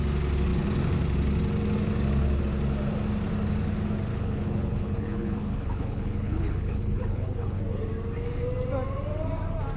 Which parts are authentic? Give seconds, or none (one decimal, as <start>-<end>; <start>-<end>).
0.0-4.1; 7.6-9.8